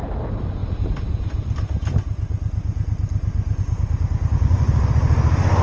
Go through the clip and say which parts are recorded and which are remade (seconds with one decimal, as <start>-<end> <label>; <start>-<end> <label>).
0.0-4.3 recorded; 4.3-4.9 remade; 4.9-5.6 recorded